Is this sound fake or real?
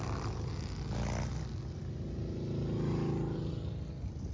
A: real